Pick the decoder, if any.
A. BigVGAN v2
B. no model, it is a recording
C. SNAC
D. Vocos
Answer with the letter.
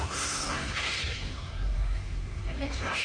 C